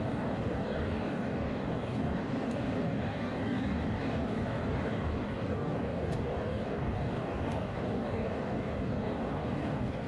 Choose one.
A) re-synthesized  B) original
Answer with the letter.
A